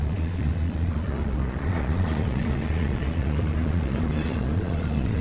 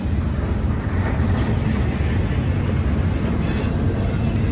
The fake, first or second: first